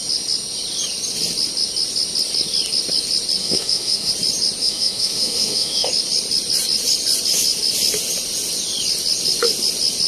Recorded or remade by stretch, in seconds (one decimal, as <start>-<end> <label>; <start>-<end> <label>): 0.0-3.4 recorded; 3.4-4.1 remade; 4.1-4.6 recorded; 4.6-5.9 remade; 5.9-10.1 recorded